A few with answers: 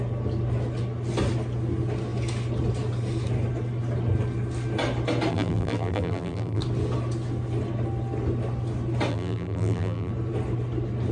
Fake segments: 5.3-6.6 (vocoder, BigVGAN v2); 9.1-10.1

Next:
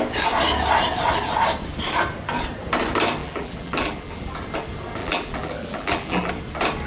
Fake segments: 3.2-4.4 (vocoder, BigVGAN v2); 5.0-6.3

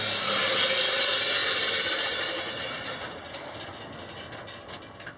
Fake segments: 0.0-5.2 (vocoder, BigVGAN v2)

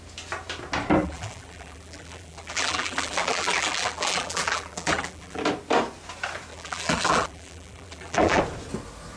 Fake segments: 1.0-5.4 (vocoder, BigVGAN v2); 6.5-8.4

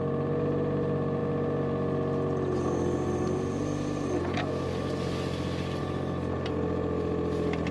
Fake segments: none